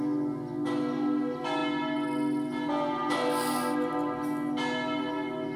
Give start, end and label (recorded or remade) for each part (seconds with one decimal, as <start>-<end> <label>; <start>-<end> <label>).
0.0-5.6 recorded